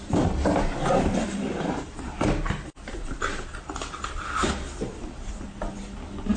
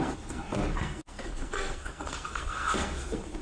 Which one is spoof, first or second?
second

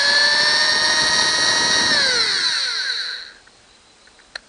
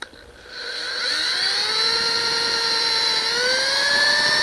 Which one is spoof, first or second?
second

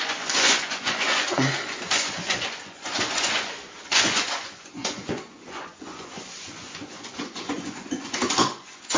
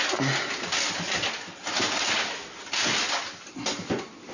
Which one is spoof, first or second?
first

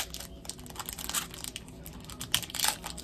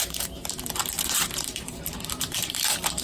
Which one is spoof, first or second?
second